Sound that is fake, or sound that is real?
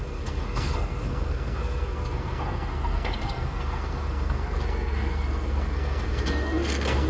fake